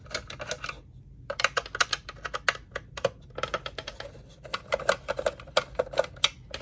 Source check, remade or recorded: recorded